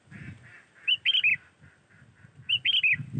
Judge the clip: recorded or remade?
recorded